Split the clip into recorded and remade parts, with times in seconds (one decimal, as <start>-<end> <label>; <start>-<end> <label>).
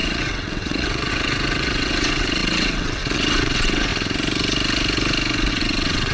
0.0-3.9 remade; 3.9-5.5 recorded; 5.5-6.1 remade